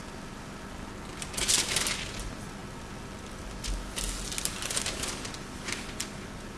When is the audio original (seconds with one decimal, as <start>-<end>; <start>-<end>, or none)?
0.0-6.6